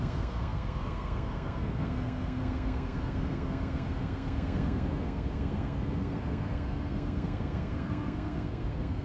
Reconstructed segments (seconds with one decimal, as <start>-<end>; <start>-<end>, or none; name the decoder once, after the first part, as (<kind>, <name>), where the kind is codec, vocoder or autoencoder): 0.0-9.0 (codec, SNAC)